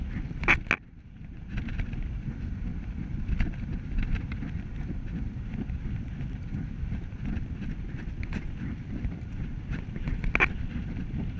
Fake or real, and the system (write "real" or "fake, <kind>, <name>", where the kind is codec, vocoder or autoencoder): real